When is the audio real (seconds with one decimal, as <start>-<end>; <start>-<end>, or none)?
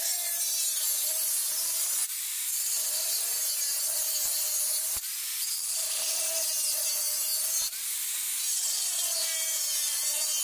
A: 0.0-10.4